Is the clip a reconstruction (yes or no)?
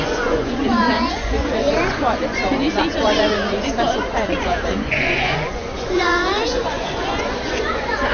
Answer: yes